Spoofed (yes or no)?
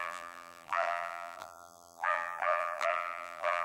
yes